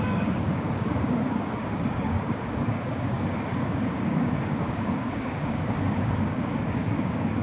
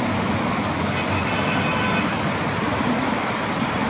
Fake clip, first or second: first